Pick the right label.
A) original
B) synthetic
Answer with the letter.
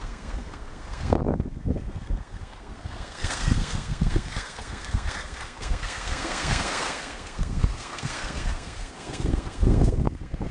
B